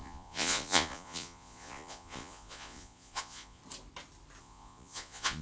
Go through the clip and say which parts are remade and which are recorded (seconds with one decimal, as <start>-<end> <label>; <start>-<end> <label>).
0.0-3.6 remade; 3.6-4.4 recorded; 4.4-5.4 remade